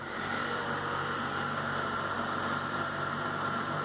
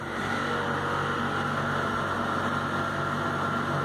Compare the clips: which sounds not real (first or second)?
first